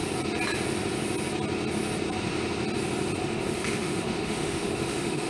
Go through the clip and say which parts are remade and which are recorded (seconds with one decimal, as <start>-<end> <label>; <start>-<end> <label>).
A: 0.0-3.2 recorded; 3.2-5.3 remade